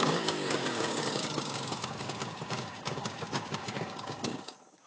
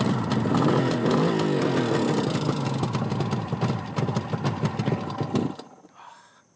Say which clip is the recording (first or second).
second